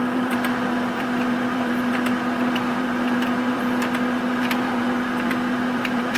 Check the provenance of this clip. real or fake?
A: fake